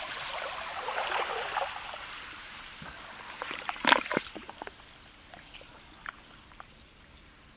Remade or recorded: recorded